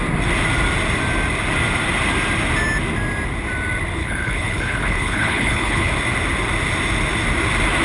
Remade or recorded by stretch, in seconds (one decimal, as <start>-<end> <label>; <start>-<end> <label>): 0.0-4.0 recorded; 4.0-5.9 remade; 5.9-7.8 recorded